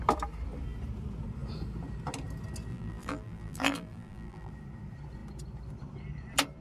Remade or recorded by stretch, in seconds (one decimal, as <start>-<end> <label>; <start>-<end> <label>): 0.0-2.7 recorded; 2.7-4.5 remade; 4.5-6.6 recorded